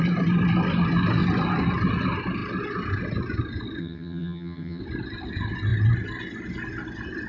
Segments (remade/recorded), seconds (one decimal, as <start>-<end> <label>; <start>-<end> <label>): 0.0-3.8 recorded; 3.8-4.8 remade; 4.8-7.3 recorded